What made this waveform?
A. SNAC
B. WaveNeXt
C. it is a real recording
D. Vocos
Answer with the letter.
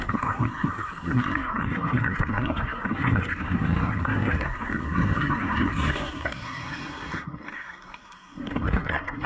A